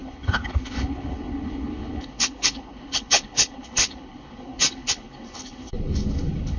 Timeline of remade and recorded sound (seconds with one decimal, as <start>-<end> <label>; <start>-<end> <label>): 0.0-6.6 remade